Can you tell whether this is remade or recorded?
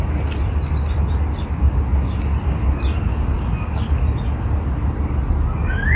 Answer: recorded